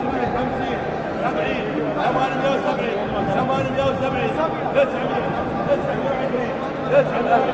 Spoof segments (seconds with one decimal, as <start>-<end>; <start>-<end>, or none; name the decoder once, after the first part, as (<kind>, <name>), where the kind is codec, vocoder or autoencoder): none